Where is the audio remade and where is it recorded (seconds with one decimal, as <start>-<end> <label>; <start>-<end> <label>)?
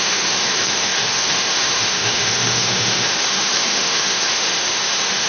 0.0-5.3 remade